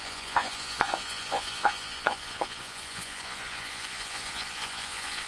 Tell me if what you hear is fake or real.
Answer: fake